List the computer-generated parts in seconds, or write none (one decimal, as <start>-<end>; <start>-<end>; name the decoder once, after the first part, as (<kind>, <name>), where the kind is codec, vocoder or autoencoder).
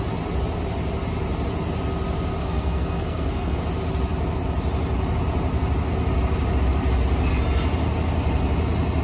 2.4-3.6 (codec, SNAC)